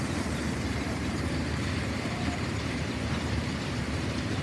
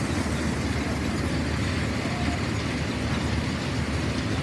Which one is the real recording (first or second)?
second